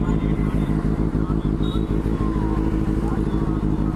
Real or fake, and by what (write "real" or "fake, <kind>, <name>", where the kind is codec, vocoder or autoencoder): real